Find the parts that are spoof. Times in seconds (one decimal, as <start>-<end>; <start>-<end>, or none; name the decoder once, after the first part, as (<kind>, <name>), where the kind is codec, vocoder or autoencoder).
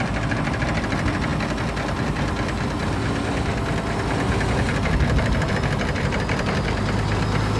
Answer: none